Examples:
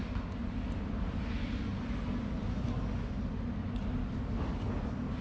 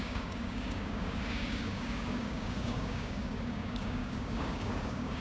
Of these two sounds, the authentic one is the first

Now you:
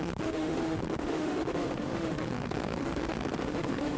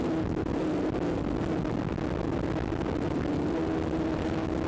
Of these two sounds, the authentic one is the second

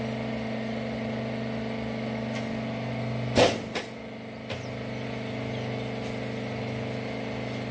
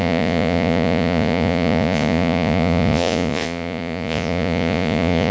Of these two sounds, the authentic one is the first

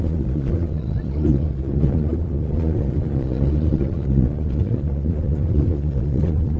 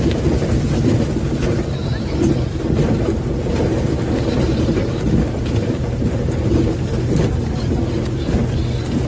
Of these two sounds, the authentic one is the second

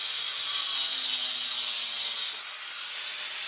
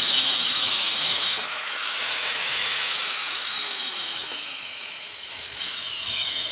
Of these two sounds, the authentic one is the first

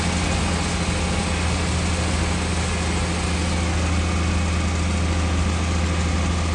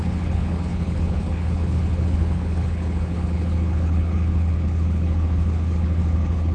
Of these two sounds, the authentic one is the first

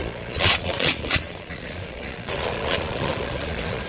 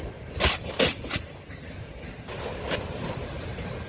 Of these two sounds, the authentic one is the second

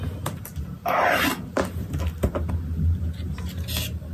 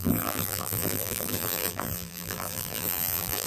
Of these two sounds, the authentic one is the first